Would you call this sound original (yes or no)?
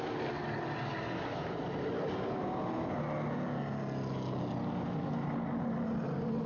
yes